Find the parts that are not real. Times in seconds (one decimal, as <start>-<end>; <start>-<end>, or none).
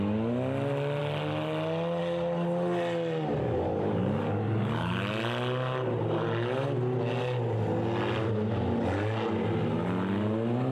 3.4-5.1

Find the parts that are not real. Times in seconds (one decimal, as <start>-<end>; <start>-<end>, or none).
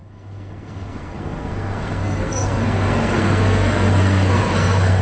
0.0-5.0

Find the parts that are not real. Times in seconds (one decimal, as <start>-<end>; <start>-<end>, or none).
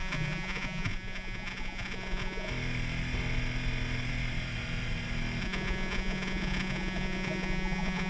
0.0-2.5; 5.4-8.1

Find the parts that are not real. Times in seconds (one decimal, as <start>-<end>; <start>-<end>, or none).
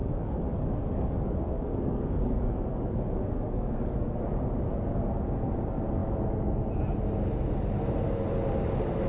0.0-4.2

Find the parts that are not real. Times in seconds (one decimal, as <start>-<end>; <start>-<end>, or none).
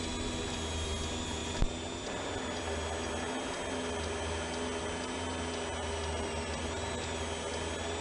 none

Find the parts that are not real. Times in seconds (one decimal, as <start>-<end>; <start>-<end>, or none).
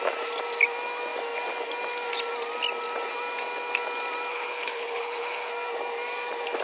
4.3-5.5